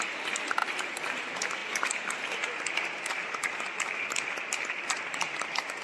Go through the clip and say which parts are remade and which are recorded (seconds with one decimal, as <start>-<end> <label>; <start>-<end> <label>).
0.0-5.8 recorded